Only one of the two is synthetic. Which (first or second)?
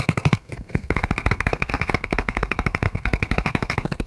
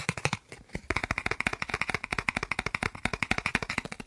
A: first